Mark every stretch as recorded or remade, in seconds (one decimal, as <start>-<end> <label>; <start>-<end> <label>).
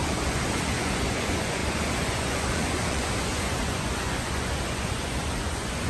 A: 0.0-5.9 remade